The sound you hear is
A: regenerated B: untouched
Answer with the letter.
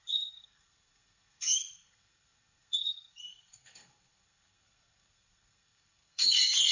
A